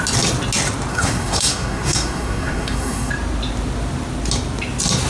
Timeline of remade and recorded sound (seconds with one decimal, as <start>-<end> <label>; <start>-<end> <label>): 0.0-0.9 recorded; 0.9-3.1 remade; 3.1-5.1 recorded